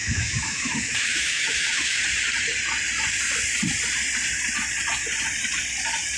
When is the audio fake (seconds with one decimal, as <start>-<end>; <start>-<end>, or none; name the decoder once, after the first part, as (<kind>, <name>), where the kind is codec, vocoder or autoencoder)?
0.0-2.0 (autoencoder, DAC-VAE)